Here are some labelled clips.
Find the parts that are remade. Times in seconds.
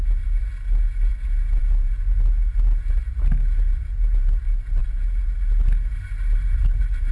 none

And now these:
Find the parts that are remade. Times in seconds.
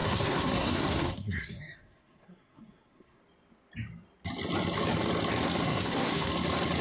0.0-3.2; 5.6-6.3